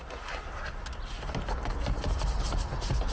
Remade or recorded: recorded